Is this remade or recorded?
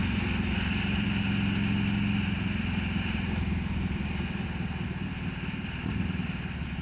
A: recorded